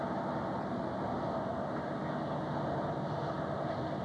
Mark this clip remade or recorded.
recorded